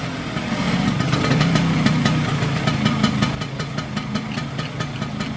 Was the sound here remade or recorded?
recorded